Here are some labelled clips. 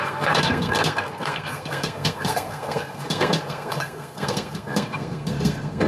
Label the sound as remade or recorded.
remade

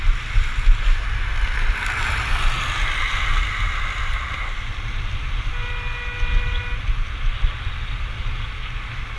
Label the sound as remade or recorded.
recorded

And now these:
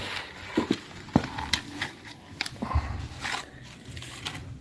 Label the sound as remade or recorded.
recorded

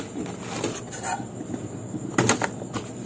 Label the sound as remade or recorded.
recorded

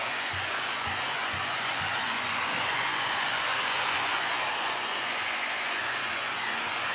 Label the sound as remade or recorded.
remade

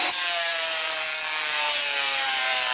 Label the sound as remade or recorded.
remade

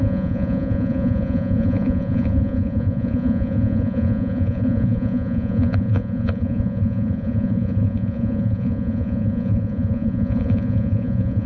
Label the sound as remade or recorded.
remade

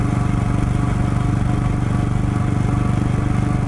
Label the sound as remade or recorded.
recorded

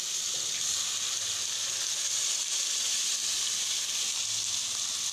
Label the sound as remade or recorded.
recorded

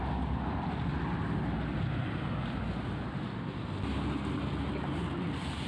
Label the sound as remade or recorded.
recorded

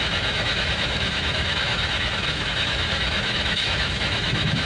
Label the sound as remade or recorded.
remade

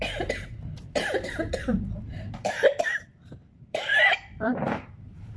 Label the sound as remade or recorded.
remade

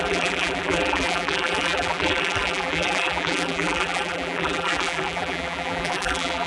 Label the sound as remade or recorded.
remade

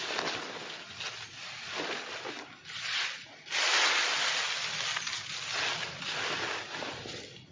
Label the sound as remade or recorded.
recorded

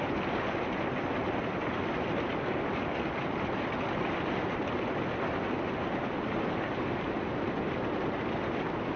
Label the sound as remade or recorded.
recorded